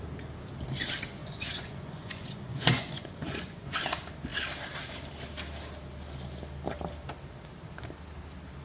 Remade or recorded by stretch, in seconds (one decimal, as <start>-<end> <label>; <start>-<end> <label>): 0.0-1.2 recorded; 1.2-3.8 remade; 3.8-8.6 recorded